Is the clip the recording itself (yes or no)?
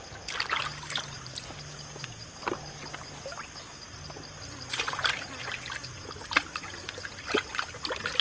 yes